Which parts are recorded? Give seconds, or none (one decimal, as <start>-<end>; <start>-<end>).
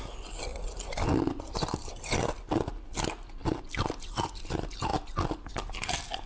0.0-6.3